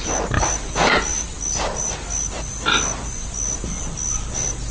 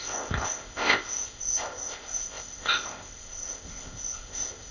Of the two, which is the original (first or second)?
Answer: first